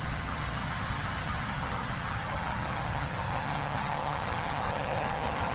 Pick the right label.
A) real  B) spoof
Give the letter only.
B